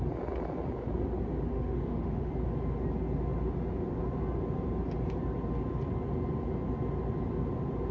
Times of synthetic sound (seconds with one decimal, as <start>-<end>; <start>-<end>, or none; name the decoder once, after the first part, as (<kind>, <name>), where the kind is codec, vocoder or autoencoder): 1.5-2.3 (autoencoder, DAC-VAE)